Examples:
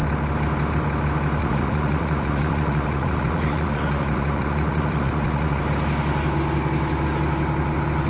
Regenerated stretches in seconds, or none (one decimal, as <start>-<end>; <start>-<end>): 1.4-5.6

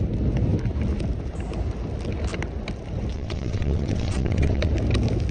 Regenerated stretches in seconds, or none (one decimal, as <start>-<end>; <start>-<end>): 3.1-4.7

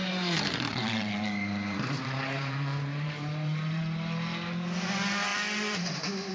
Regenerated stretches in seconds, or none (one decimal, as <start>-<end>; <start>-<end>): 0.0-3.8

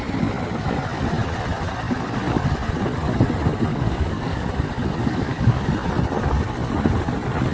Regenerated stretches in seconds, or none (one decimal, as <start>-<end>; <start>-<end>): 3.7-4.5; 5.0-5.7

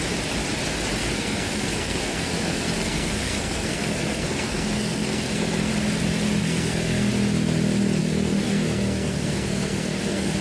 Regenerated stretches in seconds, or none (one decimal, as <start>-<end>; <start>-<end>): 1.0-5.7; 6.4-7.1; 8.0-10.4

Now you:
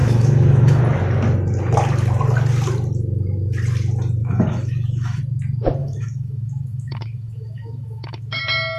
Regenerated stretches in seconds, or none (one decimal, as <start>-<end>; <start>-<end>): 0.0-0.8; 4.2-5.2; 5.8-8.4

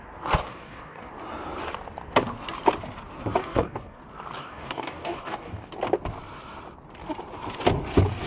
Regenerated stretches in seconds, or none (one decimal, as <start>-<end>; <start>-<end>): 0.5-1.1; 3.4-4.0; 4.4-5.7